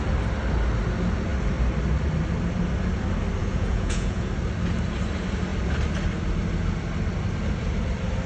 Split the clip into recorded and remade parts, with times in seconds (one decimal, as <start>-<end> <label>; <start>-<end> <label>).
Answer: 0.0-3.4 recorded; 3.4-4.3 remade; 4.3-8.3 recorded